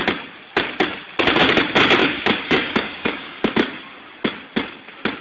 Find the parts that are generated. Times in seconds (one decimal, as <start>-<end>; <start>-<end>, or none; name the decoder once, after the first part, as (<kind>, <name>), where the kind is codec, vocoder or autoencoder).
2.0-3.5 (codec, DAC)